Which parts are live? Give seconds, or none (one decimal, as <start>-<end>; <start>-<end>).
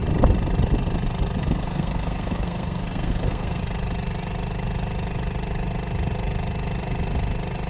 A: 0.0-1.4; 3.6-7.7